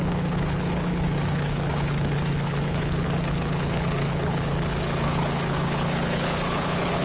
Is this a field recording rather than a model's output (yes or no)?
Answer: no